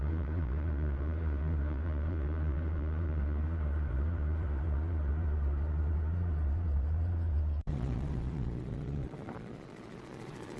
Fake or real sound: fake